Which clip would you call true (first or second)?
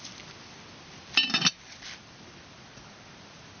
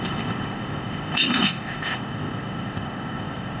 first